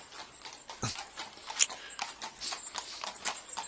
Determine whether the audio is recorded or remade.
recorded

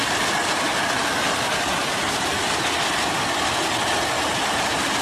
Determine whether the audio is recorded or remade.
recorded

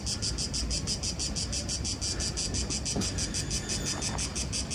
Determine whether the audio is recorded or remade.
recorded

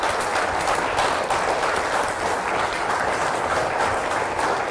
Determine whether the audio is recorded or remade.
recorded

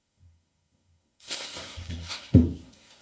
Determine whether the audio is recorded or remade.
remade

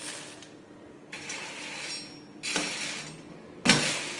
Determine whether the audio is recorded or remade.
recorded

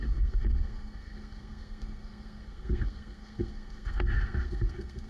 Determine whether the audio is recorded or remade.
remade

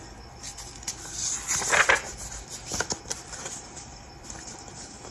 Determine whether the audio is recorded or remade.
recorded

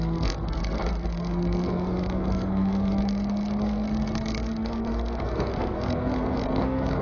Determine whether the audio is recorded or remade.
remade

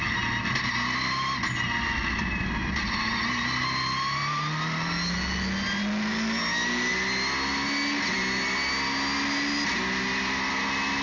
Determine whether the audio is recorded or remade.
recorded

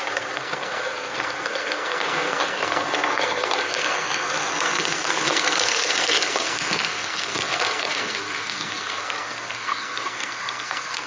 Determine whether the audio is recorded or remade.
remade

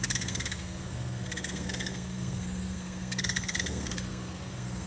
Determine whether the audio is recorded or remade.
remade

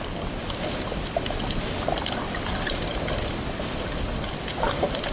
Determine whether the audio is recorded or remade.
recorded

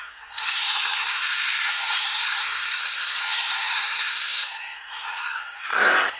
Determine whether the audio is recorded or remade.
remade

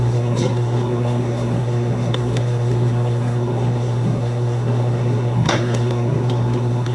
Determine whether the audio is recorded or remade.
remade